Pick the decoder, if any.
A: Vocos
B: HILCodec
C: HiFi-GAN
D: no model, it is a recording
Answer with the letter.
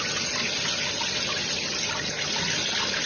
D